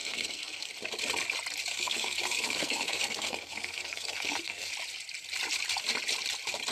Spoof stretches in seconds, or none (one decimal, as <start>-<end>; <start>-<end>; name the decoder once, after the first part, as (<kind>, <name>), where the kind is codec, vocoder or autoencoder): 0.0-0.7 (codec, SNAC); 1.7-4.7